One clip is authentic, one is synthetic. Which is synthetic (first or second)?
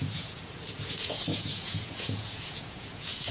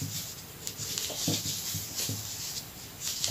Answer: first